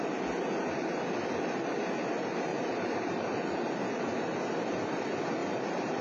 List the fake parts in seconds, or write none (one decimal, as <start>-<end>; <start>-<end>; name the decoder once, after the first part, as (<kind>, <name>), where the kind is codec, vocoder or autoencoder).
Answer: 2.5-3.6 (vocoder, BigVGAN v2); 5.4-6.0